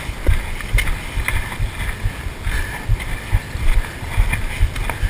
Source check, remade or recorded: recorded